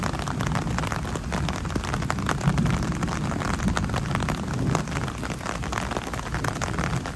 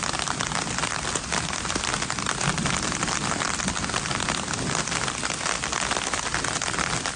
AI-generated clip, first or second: second